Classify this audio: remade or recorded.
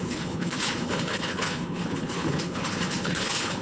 remade